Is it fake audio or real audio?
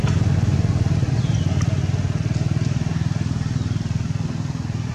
real